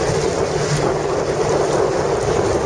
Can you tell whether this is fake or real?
real